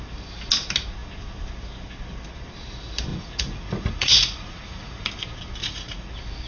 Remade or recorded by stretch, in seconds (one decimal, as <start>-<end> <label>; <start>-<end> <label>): 0.0-3.1 recorded; 3.1-5.1 remade; 5.1-5.6 recorded; 5.6-6.1 remade; 6.1-6.5 recorded